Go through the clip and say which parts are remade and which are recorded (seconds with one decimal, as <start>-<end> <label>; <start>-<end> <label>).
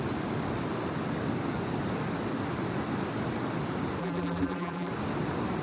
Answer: 0.0-4.0 recorded; 4.0-4.9 remade; 4.9-5.6 recorded